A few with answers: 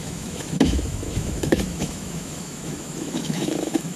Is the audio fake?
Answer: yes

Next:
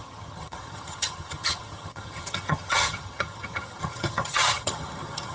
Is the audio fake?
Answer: yes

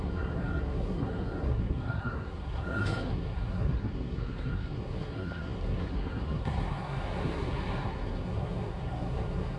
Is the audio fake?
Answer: yes